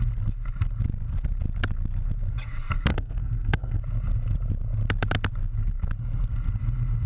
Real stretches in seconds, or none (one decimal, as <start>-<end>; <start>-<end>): 0.0-2.9; 3.8-7.1